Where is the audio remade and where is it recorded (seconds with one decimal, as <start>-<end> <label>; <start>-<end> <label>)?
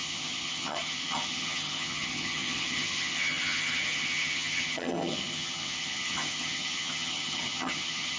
0.0-8.2 remade